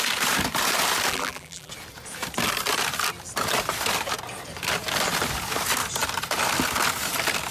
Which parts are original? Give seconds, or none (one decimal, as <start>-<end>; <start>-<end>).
0.0-1.1; 1.7-7.5